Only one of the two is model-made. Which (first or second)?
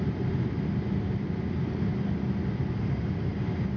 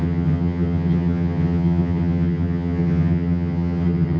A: second